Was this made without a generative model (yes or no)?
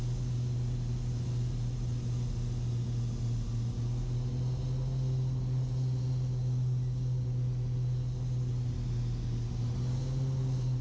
yes